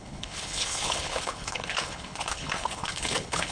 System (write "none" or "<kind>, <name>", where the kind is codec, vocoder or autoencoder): codec, HILCodec